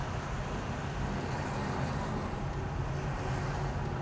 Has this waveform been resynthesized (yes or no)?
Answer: no